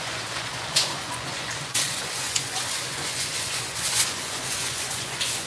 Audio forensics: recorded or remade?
remade